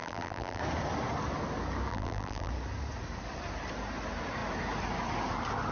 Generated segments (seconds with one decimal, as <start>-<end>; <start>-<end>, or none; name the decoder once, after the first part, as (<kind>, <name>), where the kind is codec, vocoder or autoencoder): 0.0-0.6 (vocoder, BigVGAN v2); 1.9-2.5